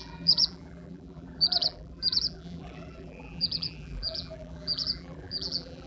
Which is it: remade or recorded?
remade